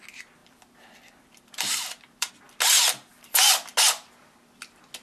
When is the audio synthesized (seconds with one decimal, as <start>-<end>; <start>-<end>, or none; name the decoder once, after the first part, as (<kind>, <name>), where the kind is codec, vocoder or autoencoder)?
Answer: 0.4-2.3 (vocoder, BigVGAN v2); 3.1-3.7